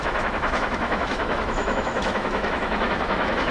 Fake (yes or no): yes